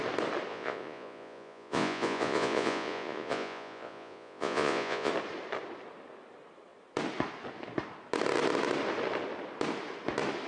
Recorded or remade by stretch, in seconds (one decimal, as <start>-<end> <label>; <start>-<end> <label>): 0.0-0.5 recorded; 0.5-5.1 remade; 5.1-10.5 recorded